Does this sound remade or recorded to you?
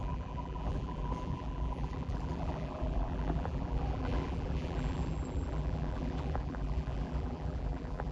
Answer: remade